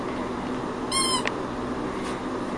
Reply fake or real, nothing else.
real